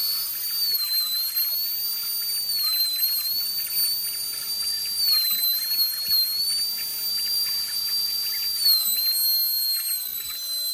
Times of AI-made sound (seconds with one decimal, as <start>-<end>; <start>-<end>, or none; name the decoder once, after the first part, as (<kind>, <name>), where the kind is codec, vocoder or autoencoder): none